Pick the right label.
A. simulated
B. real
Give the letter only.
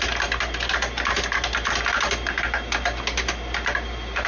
B